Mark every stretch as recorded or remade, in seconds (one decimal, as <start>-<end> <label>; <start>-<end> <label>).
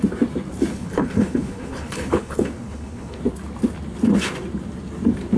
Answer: 0.0-0.7 recorded; 0.7-3.2 remade; 3.2-5.4 recorded